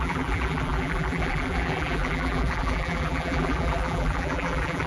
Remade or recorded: remade